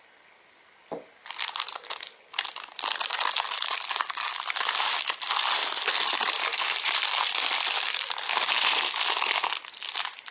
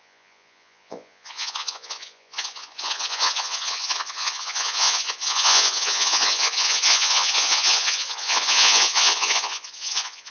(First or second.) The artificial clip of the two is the second